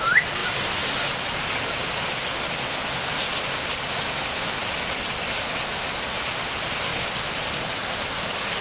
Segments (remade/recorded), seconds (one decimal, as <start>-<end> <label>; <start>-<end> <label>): 0.0-6.9 recorded; 6.9-7.5 remade; 7.5-8.6 recorded